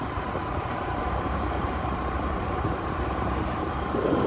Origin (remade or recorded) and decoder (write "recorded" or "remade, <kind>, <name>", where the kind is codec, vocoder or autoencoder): remade, vocoder, BigVGAN v2